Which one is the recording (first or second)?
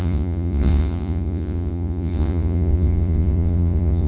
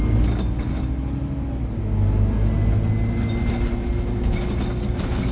second